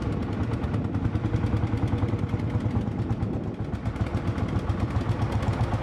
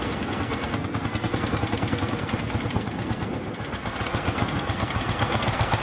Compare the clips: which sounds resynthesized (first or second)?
second